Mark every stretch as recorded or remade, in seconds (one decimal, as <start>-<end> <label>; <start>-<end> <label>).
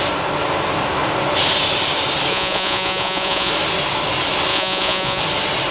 0.0-2.3 recorded; 2.3-3.5 remade; 3.5-4.5 recorded; 4.5-5.2 remade; 5.2-5.7 recorded